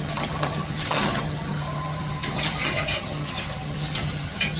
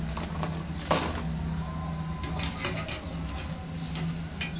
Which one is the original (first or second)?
second